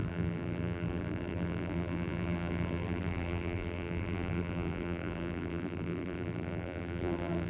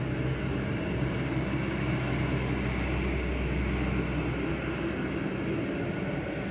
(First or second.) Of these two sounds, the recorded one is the second